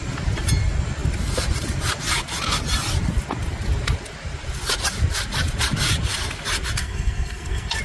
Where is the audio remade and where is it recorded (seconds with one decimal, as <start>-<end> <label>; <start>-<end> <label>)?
0.0-6.8 recorded; 6.8-7.8 remade